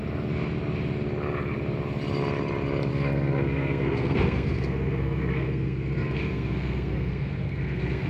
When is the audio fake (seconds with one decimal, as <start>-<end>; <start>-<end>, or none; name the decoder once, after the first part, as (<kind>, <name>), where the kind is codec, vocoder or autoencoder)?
2.9-8.1 (codec, SNAC)